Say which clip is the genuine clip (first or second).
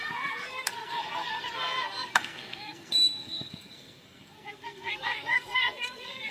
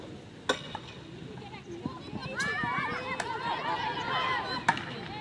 second